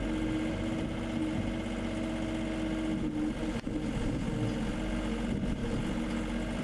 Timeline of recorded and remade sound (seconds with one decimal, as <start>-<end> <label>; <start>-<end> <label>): 0.0-6.6 recorded